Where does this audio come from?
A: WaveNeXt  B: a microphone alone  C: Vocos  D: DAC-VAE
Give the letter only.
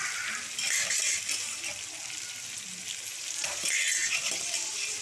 B